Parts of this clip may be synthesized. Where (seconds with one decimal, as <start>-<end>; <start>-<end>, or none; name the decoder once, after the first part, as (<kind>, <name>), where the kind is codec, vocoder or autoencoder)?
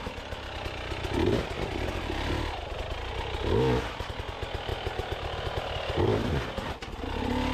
none